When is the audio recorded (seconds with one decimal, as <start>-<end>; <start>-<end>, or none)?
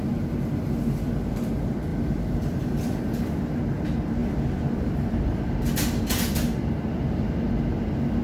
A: 0.0-1.9; 3.6-4.2; 5.4-8.2